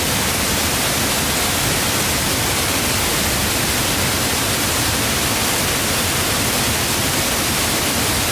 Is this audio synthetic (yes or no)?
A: no